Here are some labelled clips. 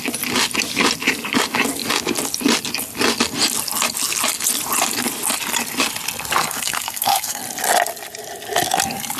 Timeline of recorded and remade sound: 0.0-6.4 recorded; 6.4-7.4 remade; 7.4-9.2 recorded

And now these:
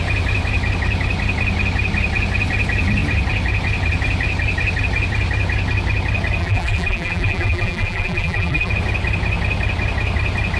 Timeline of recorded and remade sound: 0.0-6.4 recorded; 6.4-8.7 remade; 8.7-10.6 recorded

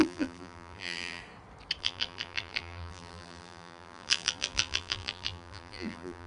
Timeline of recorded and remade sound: 0.0-1.2 remade; 1.2-1.8 recorded; 1.8-6.3 remade

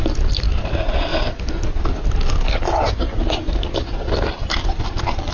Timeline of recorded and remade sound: 0.0-1.1 remade; 1.1-4.3 recorded; 4.3-5.3 remade